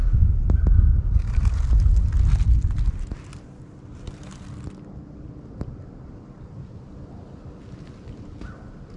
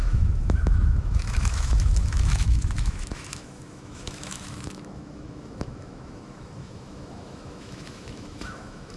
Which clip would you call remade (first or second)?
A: second